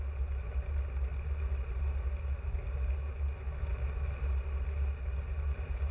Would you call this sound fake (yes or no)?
no